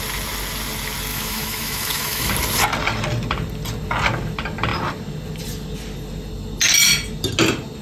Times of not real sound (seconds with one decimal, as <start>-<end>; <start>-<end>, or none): 1.1-2.3